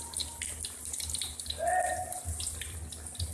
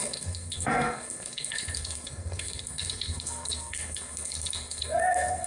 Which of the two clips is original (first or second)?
first